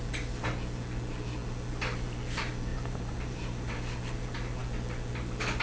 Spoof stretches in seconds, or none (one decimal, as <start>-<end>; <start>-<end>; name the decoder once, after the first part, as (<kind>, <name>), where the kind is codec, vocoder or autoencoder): 2.7-3.7 (vocoder, BigVGAN v2)